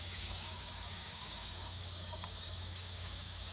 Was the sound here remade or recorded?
remade